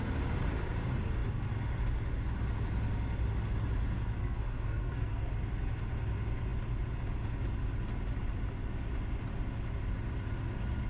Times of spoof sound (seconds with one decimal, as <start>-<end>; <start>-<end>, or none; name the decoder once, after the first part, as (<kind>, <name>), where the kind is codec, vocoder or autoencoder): 4.2-5.3 (codec, SNAC)